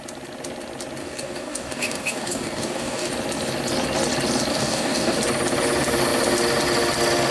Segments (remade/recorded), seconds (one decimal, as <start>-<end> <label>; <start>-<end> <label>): 0.0-1.0 recorded; 1.0-3.1 remade; 3.1-4.5 recorded; 4.5-5.2 remade; 5.2-7.3 recorded